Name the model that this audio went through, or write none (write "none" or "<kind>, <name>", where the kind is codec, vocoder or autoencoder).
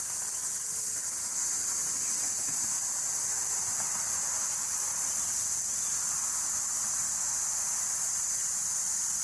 none